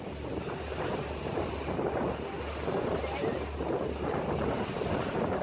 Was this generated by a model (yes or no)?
no